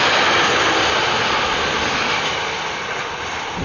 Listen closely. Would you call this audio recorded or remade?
remade